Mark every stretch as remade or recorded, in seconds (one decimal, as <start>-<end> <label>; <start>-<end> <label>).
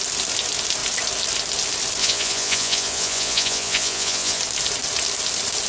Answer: 0.0-2.0 recorded; 2.0-4.4 remade; 4.4-5.7 recorded